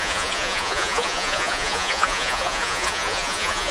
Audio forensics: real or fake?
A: fake